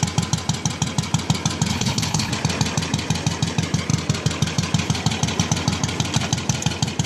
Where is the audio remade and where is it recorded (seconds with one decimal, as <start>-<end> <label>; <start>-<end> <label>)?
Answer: 0.0-1.7 recorded; 1.7-2.3 remade; 2.3-7.1 recorded